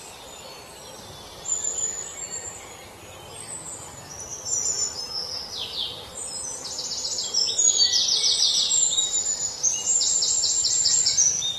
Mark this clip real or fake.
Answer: real